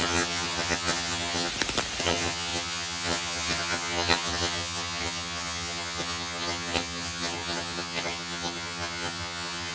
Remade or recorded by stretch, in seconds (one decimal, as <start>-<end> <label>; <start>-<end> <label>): 0.0-1.5 remade; 1.5-2.0 recorded; 2.0-9.7 remade

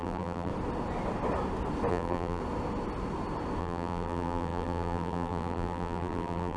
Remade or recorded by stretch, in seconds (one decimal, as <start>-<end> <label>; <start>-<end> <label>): 0.0-0.5 remade; 0.5-1.9 recorded; 1.9-2.4 remade; 2.4-3.6 recorded; 3.6-6.6 remade

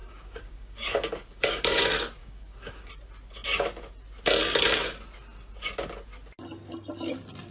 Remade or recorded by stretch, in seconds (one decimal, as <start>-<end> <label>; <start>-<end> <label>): 0.0-1.8 remade; 1.8-2.2 recorded; 2.2-2.9 remade; 2.9-7.5 recorded

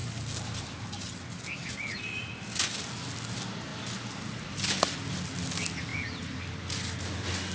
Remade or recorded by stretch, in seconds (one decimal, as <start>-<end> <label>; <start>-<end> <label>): 0.0-7.5 recorded

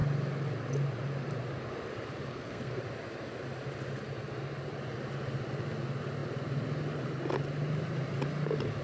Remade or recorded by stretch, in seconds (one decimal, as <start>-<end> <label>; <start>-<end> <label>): 0.0-2.3 recorded; 2.3-2.8 remade; 2.8-8.8 recorded

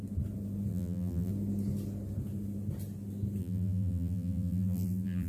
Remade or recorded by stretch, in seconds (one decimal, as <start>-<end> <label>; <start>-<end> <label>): 0.0-0.7 recorded; 0.7-1.3 remade; 1.3-3.4 recorded; 3.4-5.3 remade

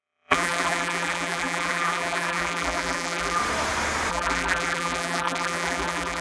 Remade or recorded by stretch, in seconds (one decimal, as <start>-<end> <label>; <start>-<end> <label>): 0.0-3.4 remade; 3.4-4.1 recorded; 4.1-6.2 remade